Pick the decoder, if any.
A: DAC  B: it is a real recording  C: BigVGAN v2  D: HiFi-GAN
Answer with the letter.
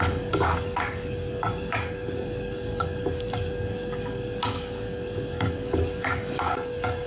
A